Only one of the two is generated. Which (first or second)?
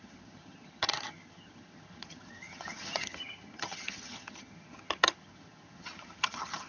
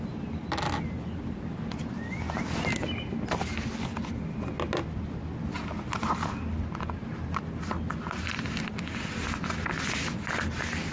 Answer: first